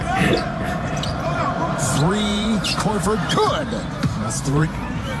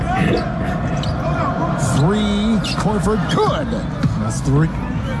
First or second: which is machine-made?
first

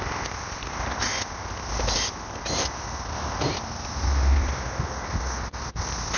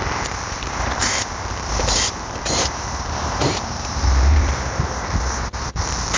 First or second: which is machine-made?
second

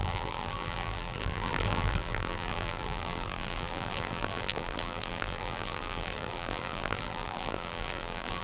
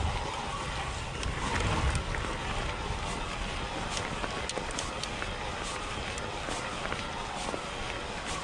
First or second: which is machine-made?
first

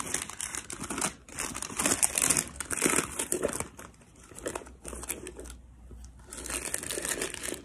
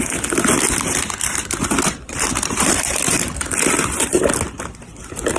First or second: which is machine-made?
second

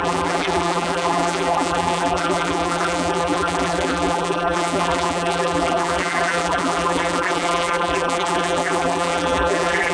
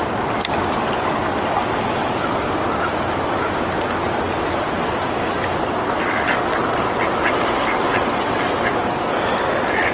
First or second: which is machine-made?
first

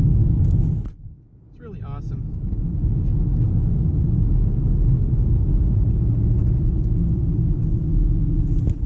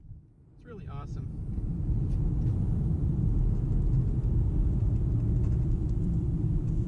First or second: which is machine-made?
second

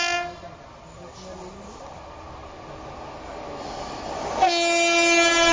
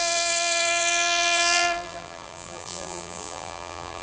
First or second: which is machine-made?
second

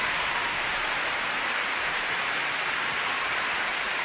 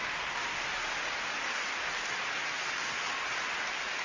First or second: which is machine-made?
first